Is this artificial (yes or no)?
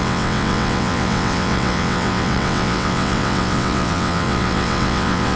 yes